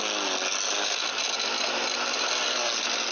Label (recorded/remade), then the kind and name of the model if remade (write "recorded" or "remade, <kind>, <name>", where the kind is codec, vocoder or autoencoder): recorded